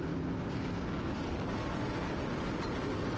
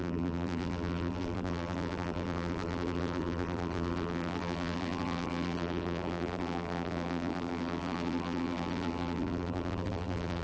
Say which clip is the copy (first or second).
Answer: second